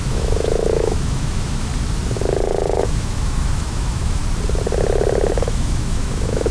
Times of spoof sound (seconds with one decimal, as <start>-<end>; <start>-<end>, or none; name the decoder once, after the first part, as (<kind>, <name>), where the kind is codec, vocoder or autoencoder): 0.0-1.7 (autoencoder, DAC-VAE); 2.8-4.2; 5.4-6.5